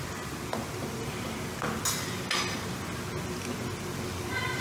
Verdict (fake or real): real